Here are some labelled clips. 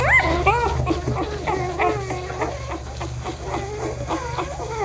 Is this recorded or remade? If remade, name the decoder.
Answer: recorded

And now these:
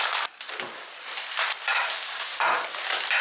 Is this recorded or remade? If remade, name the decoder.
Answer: recorded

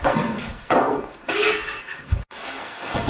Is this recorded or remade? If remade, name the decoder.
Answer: remade, codec, SNAC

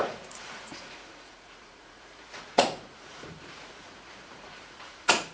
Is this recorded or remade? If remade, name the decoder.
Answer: remade, vocoder, Vocos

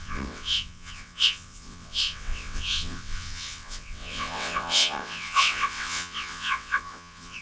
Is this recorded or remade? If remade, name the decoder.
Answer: remade, vocoder, WaveNeXt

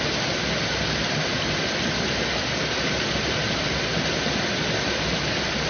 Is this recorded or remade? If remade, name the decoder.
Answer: recorded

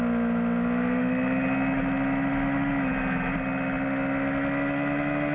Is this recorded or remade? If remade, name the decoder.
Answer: recorded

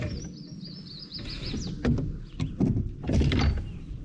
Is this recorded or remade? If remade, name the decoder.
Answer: recorded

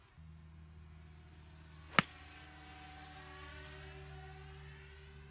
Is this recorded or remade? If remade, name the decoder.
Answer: recorded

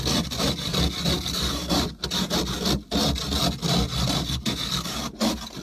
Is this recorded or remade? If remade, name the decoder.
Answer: recorded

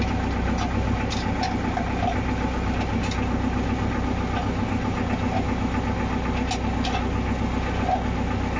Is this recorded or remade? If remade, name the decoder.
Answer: recorded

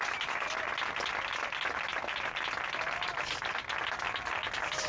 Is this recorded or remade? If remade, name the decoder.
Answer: recorded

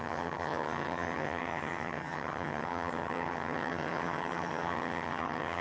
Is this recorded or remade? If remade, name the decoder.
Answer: remade, vocoder, HiFi-GAN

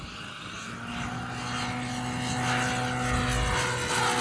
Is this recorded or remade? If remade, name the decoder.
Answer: recorded